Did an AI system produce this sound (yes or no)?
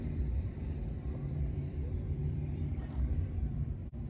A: yes